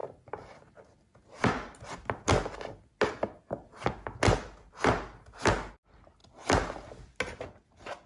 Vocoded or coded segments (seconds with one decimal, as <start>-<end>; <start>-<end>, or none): none